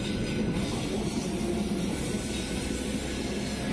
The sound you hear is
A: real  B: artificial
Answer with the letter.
A